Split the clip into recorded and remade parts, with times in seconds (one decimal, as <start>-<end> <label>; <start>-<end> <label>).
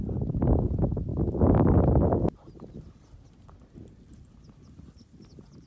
0.0-5.7 recorded